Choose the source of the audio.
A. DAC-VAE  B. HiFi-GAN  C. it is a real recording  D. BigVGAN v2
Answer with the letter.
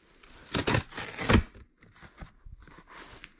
C